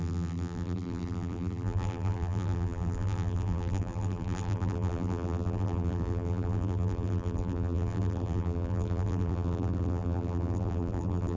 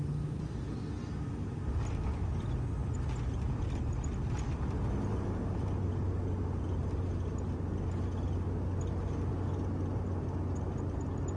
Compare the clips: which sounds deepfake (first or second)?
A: first